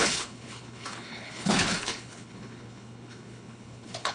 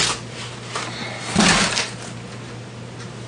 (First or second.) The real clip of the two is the second